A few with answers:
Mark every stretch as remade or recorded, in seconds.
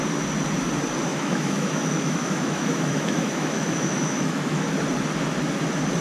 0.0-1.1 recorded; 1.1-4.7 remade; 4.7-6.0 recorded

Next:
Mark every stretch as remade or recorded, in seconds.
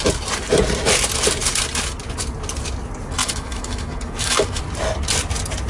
0.0-3.2 recorded; 3.2-4.6 remade; 4.6-5.7 recorded